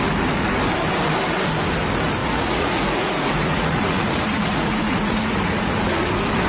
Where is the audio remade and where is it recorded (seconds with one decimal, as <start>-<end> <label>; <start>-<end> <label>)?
0.0-2.2 recorded; 2.2-6.1 remade; 6.1-6.5 recorded